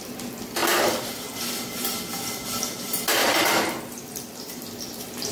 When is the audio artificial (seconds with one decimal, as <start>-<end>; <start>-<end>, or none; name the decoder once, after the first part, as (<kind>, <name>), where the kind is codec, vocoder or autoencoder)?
0.6-1.2 (vocoder, BigVGAN v2); 3.2-5.3